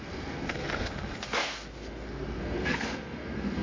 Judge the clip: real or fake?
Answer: fake